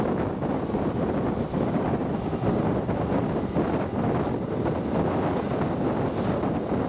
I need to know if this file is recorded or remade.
recorded